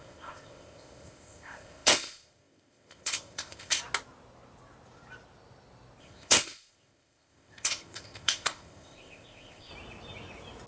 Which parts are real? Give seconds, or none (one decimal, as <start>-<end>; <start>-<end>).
3.8-6.0; 9.7-10.7